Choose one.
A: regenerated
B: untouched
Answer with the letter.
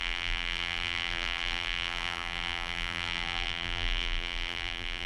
A